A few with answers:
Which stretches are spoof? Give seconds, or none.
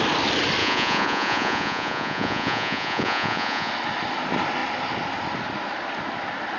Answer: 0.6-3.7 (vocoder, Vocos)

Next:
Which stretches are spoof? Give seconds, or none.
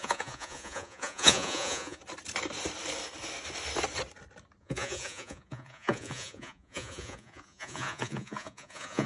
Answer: 0.0-2.0 (vocoder, Vocos); 4.6-9.1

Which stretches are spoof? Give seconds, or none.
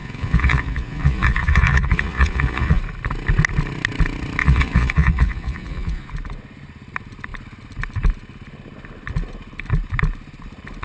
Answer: 0.0-2.8 (vocoder, Vocos); 4.4-6.1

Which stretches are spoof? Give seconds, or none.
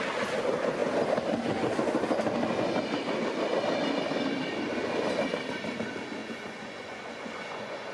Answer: 6.2-7.9 (vocoder, Vocos)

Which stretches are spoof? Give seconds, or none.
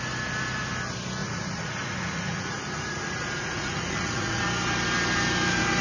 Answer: 1.2-4.4 (vocoder, Vocos)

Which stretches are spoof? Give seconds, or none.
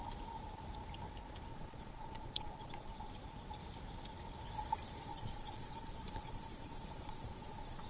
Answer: 1.5-3.1 (vocoder, Vocos); 5.1-7.9